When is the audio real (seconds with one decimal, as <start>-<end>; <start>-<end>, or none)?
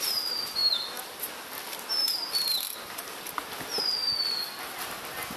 0.0-5.4